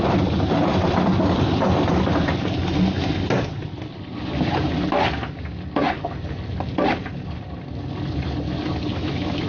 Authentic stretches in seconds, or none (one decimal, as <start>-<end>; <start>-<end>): 0.0-8.9